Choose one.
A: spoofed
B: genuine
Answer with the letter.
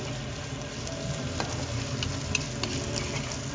B